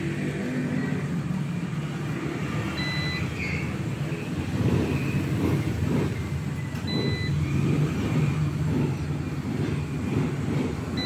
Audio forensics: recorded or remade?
recorded